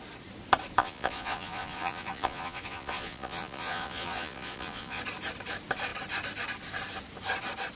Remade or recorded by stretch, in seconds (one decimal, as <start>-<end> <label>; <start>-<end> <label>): 0.0-0.8 recorded; 0.8-5.0 remade; 5.0-7.8 recorded